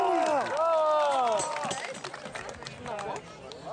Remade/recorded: recorded